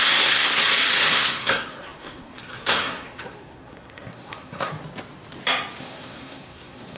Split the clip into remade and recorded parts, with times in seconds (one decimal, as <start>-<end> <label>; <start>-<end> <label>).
0.0-0.6 remade; 0.6-1.1 recorded; 1.1-4.8 remade; 4.8-5.8 recorded; 5.8-7.0 remade